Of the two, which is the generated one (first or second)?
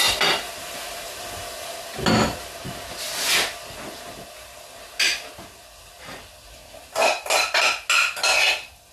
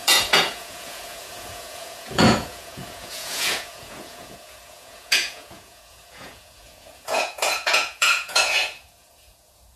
second